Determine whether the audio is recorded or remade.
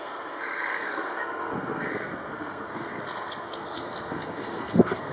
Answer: remade